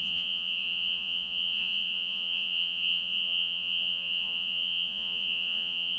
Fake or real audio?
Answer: fake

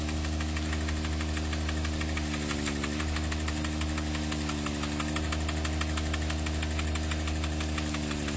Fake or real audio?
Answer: real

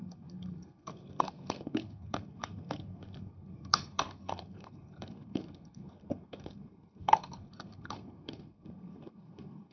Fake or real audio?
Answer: fake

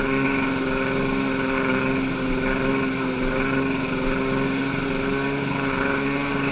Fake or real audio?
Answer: real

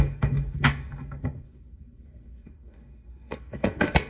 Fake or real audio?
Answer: fake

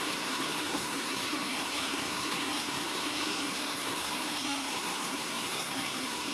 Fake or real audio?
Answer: fake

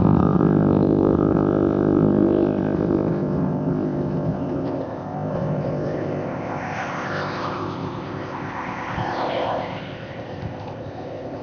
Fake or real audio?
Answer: fake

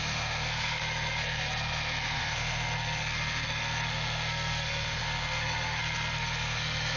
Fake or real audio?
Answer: fake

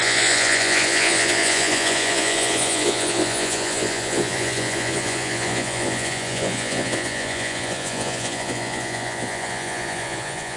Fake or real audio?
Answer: fake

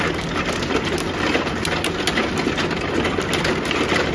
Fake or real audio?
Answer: real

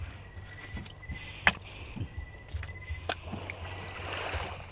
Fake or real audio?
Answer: real